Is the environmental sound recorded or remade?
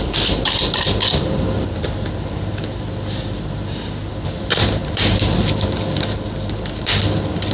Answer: remade